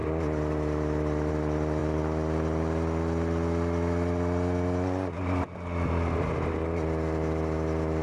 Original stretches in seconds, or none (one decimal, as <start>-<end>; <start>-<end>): 0.0-8.0